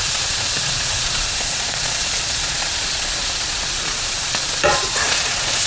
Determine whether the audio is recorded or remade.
remade